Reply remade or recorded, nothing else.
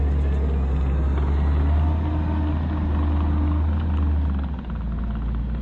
recorded